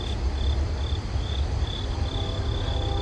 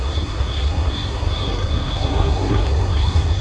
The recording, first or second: first